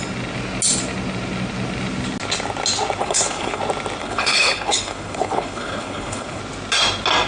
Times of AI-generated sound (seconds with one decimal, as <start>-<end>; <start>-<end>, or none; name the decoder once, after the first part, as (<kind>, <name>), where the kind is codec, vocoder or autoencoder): 3.0-3.6 (codec, HILCodec); 4.0-6.4

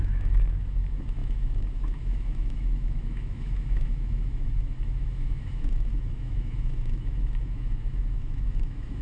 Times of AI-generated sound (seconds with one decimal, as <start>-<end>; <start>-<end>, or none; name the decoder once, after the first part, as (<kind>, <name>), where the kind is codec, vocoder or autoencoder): 0.0-9.0 (autoencoder, DAC-VAE)

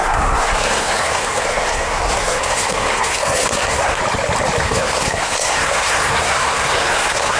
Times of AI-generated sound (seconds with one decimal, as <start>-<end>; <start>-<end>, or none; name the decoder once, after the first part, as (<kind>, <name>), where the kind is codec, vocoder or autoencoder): 0.0-4.0 (codec, SNAC); 4.6-7.4

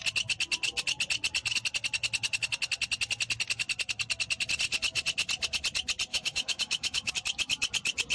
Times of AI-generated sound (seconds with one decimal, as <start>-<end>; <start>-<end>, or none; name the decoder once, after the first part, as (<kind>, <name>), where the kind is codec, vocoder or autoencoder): 6.1-7.1 (autoencoder, DAC-VAE)

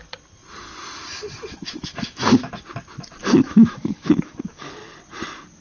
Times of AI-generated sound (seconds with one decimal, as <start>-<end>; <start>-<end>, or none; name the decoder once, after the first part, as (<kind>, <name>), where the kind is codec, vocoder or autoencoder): 1.5-2.5 (autoencoder, DAC-VAE); 3.2-4.7